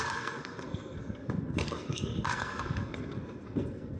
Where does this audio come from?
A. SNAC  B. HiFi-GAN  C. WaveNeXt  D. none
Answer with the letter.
A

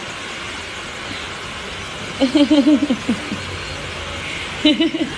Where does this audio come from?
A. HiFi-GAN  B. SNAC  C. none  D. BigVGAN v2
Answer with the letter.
C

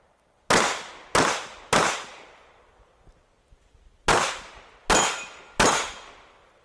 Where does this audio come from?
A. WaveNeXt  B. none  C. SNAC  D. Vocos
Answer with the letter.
B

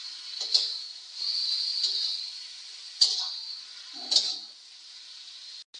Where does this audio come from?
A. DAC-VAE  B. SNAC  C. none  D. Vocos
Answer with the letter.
C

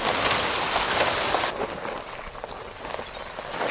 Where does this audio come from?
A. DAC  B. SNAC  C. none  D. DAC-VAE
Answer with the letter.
C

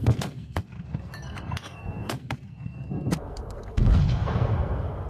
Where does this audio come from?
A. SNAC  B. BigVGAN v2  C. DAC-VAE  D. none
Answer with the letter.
A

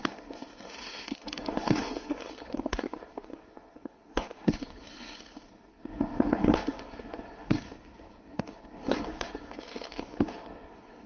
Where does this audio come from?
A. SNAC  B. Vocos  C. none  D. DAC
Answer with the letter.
A